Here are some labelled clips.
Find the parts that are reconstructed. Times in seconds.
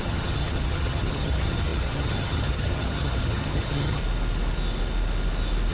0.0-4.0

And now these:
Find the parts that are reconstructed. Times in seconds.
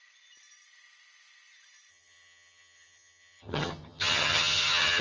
1.9-5.0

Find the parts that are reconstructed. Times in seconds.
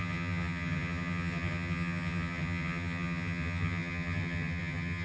0.0-5.0